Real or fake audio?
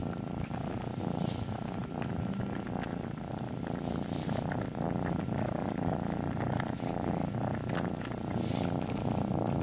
real